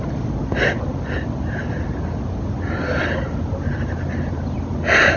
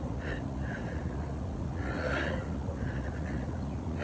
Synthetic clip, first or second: second